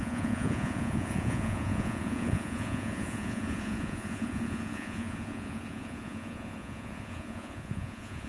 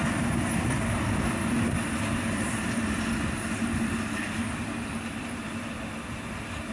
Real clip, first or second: second